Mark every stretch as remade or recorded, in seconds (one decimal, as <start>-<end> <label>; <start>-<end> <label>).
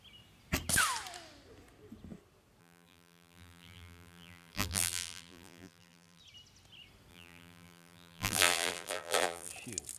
0.0-2.6 recorded; 2.6-6.2 remade; 6.2-7.1 recorded; 7.1-9.5 remade; 9.5-10.0 recorded